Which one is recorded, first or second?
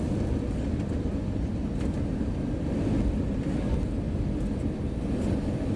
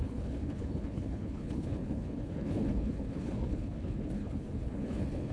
first